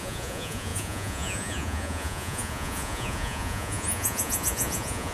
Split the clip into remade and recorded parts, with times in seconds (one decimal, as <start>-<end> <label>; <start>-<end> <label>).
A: 0.0-5.1 remade